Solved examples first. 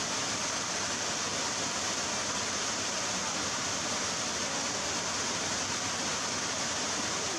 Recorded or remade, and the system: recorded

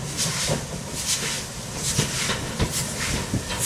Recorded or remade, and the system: recorded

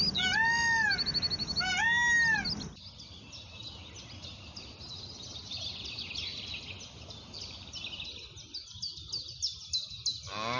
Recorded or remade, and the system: recorded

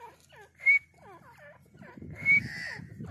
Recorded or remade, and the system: recorded